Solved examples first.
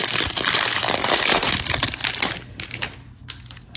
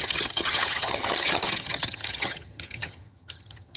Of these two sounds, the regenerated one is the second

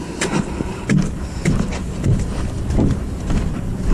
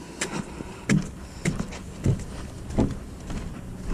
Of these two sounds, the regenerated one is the first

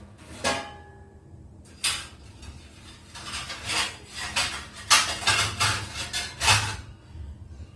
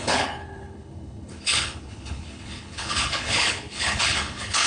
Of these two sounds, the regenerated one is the second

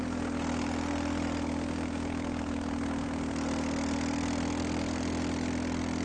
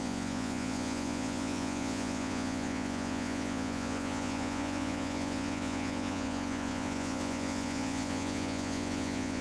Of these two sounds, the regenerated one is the second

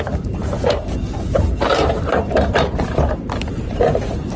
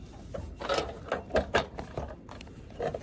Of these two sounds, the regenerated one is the first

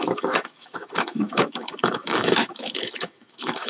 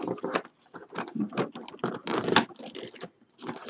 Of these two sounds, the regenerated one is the first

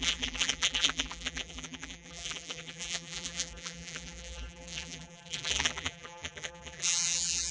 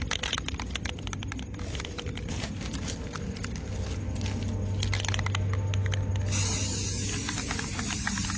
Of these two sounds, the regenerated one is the first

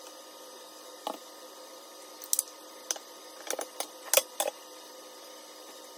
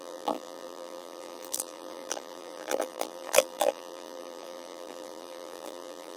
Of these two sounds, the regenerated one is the second